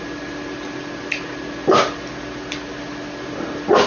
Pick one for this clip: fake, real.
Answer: real